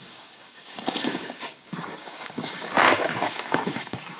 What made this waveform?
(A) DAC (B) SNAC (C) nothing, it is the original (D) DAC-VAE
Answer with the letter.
A